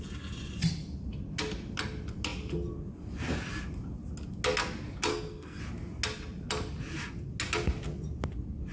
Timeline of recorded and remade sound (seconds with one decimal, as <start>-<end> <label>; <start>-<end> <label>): 0.0-5.1 recorded; 5.1-5.6 remade; 5.6-8.7 recorded